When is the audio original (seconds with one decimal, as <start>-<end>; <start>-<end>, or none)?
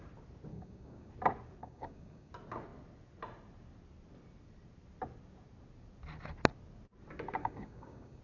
0.0-0.5; 1.1-1.6; 2.3-7.4